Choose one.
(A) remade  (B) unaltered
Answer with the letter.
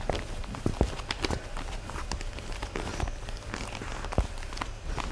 B